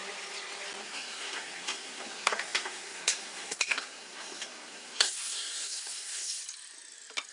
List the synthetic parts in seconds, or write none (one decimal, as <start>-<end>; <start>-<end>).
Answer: 0.8-6.4